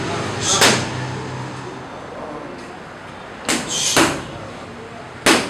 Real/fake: real